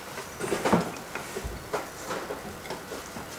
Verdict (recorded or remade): recorded